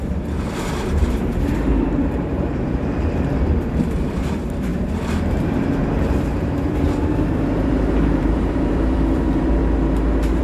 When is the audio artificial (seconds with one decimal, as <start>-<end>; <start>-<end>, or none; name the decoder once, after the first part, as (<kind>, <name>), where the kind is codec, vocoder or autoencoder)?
0.0-9.6 (vocoder, BigVGAN v2)